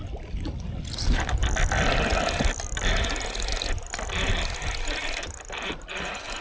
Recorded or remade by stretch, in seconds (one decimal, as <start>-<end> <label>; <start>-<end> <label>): 0.0-6.4 recorded